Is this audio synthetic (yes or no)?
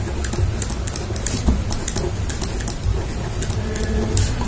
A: no